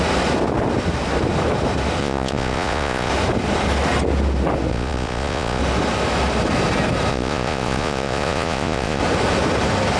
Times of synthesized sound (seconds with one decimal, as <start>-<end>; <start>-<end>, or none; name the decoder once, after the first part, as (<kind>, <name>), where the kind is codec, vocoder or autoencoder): 2.0-3.1 (vocoder, Vocos); 4.7-5.6; 7.1-9.0